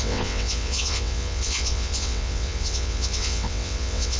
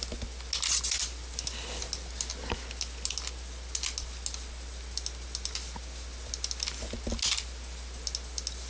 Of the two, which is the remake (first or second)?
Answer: first